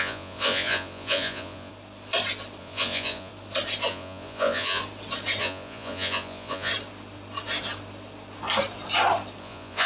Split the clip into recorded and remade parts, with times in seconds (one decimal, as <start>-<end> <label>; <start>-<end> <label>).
0.0-1.7 remade; 1.7-2.6 recorded; 2.6-3.3 remade; 3.3-3.9 recorded; 3.9-4.8 remade; 4.8-5.4 recorded; 5.4-6.7 remade; 6.7-9.4 recorded; 9.4-9.9 remade